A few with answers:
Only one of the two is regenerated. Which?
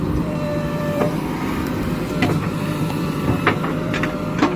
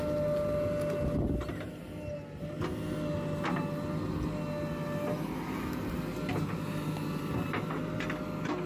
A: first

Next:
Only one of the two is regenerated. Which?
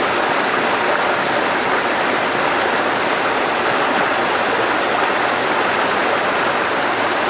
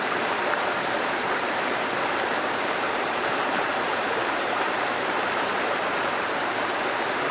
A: second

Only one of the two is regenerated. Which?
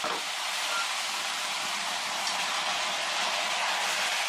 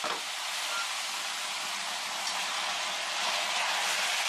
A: first